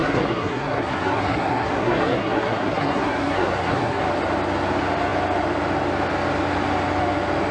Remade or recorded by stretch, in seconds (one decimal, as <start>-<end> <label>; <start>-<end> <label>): 0.0-4.0 remade; 4.0-7.5 recorded

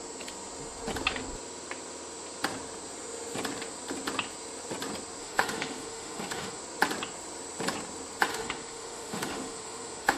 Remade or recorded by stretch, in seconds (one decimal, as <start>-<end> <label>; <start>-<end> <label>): 0.0-5.2 recorded; 5.2-6.6 remade; 6.6-8.3 recorded; 8.3-10.2 remade

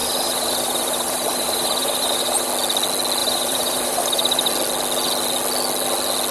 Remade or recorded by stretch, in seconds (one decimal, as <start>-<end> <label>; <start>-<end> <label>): 0.0-2.5 remade; 2.5-3.2 recorded; 3.2-4.5 remade; 4.5-6.3 recorded

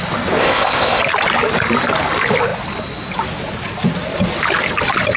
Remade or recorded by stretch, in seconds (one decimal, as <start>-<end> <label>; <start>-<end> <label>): 0.0-0.4 recorded; 0.4-1.0 remade; 1.0-5.2 recorded

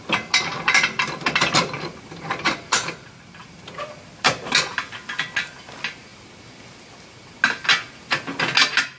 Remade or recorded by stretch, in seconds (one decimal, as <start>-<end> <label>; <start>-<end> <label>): 0.0-3.6 remade; 3.6-9.0 recorded